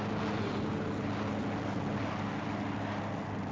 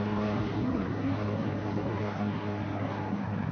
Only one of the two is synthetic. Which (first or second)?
second